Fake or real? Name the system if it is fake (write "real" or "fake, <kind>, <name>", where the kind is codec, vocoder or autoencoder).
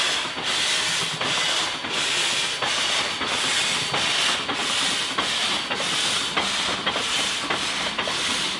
real